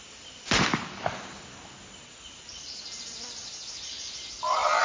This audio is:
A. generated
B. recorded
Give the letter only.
B